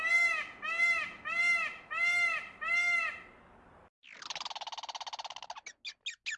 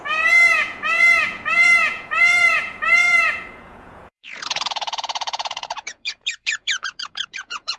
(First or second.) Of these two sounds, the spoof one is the second